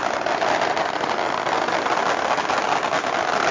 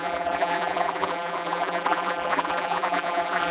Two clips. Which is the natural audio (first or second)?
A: first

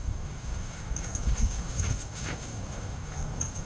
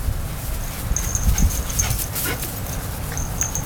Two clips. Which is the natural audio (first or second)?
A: second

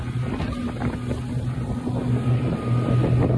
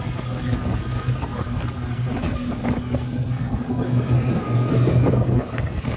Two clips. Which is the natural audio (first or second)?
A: first